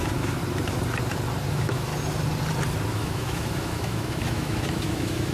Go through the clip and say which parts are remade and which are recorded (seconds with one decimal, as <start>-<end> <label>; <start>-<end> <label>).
0.0-0.4 remade; 0.4-1.5 recorded; 1.5-1.9 remade; 1.9-2.9 recorded; 2.9-5.3 remade